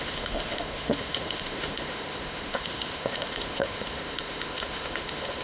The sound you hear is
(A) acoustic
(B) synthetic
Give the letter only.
B